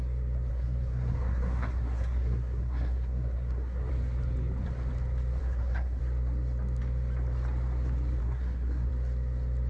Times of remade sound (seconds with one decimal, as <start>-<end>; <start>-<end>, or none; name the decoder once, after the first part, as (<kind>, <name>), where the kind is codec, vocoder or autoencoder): 0.5-3.9 (codec, SNAC); 5.4-6.0; 8.2-8.9